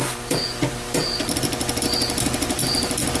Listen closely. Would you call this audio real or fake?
real